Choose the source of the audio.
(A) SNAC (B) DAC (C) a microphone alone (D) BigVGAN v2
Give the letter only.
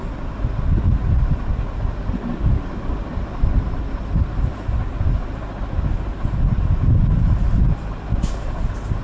C